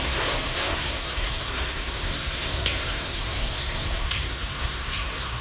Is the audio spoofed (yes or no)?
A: yes